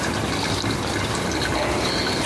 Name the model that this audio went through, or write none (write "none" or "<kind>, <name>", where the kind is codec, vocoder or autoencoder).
none